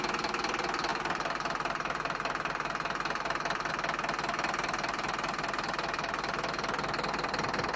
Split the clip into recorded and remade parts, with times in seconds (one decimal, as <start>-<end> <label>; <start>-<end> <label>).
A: 0.0-7.8 recorded